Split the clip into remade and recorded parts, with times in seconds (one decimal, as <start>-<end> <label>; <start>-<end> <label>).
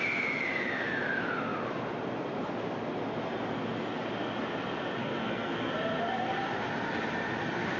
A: 0.0-5.0 recorded; 5.0-5.7 remade; 5.7-7.8 recorded